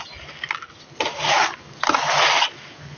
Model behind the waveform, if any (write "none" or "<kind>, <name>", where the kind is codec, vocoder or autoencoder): none